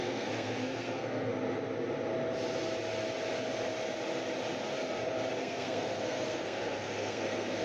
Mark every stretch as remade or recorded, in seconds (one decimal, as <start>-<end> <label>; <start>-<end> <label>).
0.0-1.3 remade; 1.3-5.4 recorded; 5.4-7.6 remade